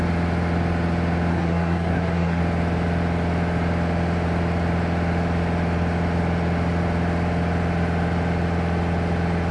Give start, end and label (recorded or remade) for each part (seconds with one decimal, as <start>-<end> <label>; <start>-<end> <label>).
0.0-1.3 recorded; 1.3-2.4 remade; 2.4-9.5 recorded

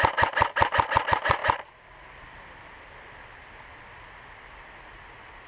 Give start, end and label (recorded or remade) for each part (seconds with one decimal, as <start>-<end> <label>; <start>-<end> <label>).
0.0-5.5 recorded

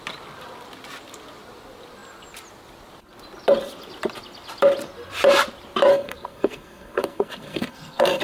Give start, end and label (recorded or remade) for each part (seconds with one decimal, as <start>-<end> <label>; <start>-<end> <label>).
0.0-5.9 recorded; 5.9-8.2 remade

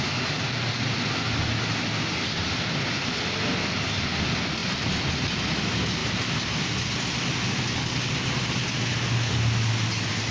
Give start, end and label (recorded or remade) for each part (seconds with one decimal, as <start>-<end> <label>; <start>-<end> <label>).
0.0-10.3 recorded

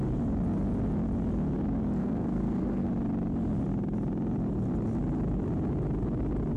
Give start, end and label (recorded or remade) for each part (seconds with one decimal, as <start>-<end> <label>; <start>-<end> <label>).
0.0-2.0 recorded; 2.0-2.9 remade; 2.9-6.6 recorded

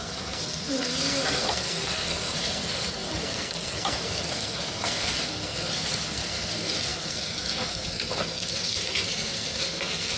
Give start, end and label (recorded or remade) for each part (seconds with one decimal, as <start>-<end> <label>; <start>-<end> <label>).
0.0-10.2 remade

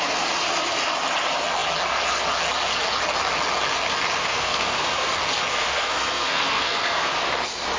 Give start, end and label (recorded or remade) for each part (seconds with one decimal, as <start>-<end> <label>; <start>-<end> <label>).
0.0-4.2 recorded; 4.2-5.1 remade; 5.1-5.5 recorded; 5.5-7.2 remade; 7.2-7.8 recorded

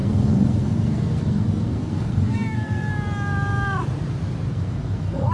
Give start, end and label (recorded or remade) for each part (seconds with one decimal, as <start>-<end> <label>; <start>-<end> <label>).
0.0-2.9 remade; 2.9-4.5 recorded; 4.5-5.3 remade